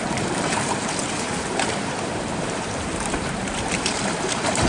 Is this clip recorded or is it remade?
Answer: remade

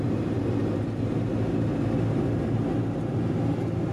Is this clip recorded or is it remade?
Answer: recorded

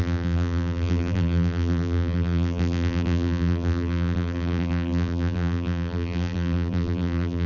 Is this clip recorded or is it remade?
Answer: remade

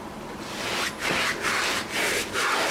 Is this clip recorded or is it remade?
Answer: recorded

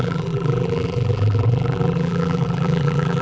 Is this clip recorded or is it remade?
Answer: remade